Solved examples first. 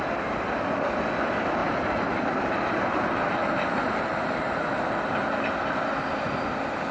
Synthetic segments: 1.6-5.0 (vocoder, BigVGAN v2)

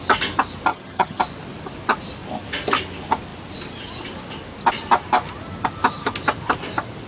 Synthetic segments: 0.7-1.2 (vocoder, HiFi-GAN)

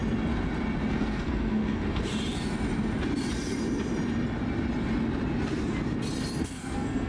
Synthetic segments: 0.9-2.1 (codec, SNAC); 6.4-7.1

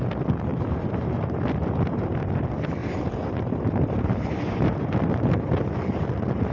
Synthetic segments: 0.5-1.5 (vocoder, BigVGAN v2); 2.8-5.4

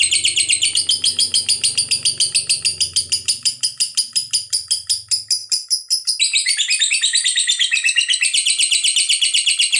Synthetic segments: none